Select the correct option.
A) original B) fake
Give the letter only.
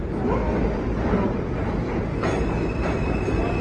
A